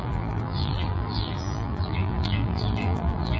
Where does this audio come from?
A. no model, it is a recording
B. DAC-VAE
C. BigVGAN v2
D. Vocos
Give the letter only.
C